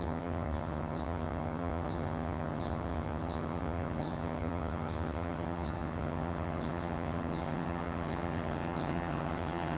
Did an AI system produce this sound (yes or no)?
yes